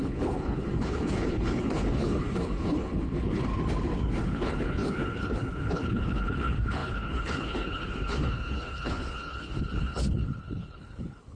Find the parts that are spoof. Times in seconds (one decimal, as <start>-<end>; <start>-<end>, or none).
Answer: 0.0-3.5; 4.2-11.4